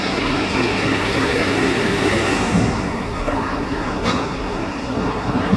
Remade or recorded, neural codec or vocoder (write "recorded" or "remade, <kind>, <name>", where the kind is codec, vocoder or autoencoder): remade, codec, SNAC